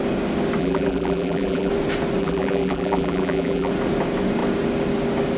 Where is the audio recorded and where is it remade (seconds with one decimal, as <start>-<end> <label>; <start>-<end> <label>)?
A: 0.0-0.6 recorded; 0.6-1.7 remade; 1.7-2.2 recorded; 2.2-3.7 remade; 3.7-5.4 recorded